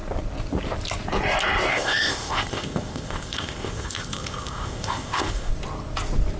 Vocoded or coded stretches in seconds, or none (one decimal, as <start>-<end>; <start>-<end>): 1.7-5.5